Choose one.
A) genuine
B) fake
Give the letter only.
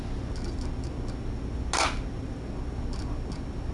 A